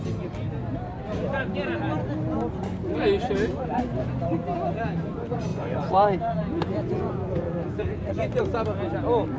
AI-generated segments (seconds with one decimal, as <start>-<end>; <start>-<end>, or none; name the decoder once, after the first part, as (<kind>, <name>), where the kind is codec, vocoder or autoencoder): 5.5-8.4 (vocoder, Vocos)